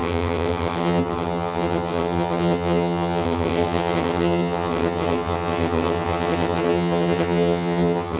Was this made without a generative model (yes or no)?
no